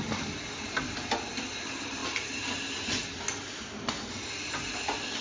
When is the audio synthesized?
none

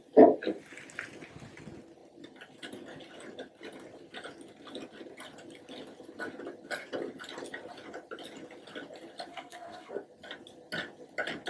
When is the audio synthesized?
9.3-9.9 (codec, SNAC)

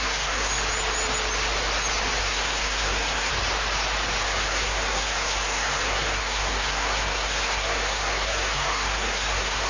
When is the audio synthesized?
0.0-0.5 (codec, SNAC); 2.2-3.3; 4.2-9.7

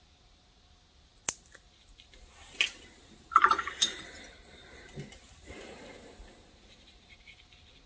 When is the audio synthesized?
none